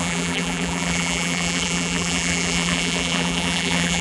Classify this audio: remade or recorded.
remade